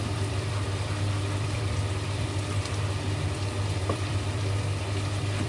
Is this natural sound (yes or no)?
no